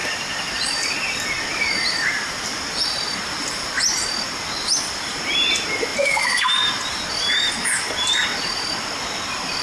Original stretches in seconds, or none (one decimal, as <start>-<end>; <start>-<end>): 4.1-9.6